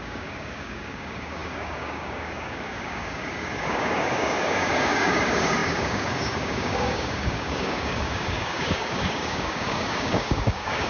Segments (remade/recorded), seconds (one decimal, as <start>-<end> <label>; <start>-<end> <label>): 0.0-10.9 remade